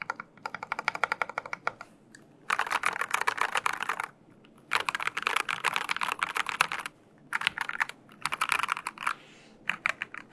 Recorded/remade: recorded